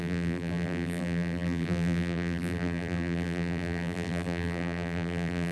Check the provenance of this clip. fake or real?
fake